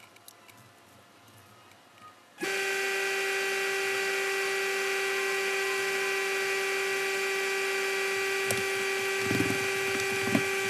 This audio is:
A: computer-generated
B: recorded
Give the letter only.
B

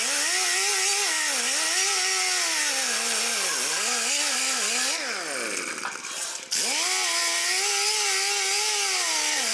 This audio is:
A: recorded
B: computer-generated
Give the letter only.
A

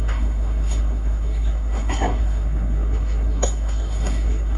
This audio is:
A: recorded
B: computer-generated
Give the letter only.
B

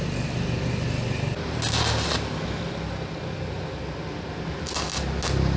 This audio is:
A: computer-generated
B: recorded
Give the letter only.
B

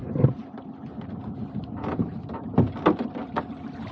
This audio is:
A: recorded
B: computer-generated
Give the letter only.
A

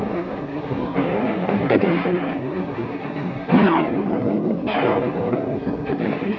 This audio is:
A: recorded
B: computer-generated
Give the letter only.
B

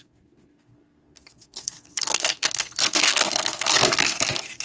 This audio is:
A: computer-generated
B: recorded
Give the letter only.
A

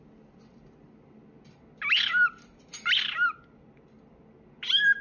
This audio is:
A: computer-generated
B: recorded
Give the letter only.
B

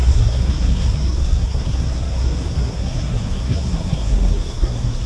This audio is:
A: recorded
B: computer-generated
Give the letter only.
B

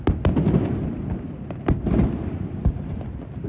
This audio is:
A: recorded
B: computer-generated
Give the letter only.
A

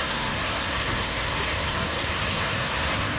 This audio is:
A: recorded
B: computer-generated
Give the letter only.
B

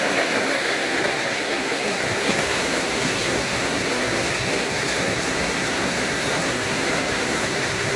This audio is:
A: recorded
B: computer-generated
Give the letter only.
B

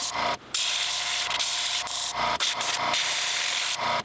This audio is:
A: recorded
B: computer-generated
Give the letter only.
A